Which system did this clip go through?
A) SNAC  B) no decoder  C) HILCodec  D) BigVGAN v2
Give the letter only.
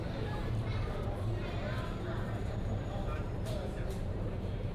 D